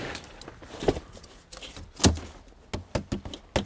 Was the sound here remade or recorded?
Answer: recorded